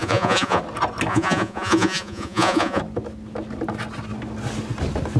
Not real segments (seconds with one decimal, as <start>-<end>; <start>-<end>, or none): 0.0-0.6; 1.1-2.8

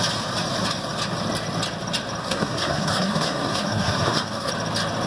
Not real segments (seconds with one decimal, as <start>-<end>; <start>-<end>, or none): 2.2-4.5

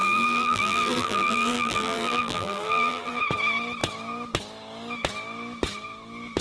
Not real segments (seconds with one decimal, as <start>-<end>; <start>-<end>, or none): 0.0-3.2

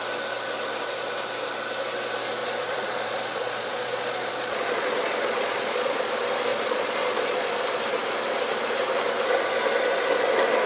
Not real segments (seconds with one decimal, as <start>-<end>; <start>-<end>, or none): 2.4-6.1; 6.5-7.5